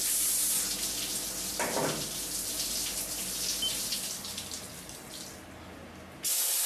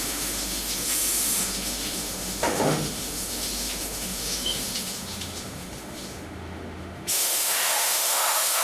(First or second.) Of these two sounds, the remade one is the second